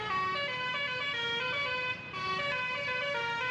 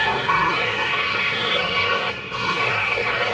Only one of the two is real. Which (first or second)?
first